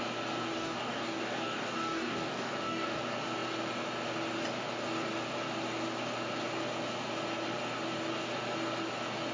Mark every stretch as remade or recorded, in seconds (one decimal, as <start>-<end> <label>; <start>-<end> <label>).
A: 0.0-0.4 recorded; 0.4-3.0 remade; 3.0-9.3 recorded